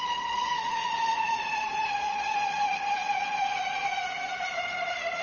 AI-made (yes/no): yes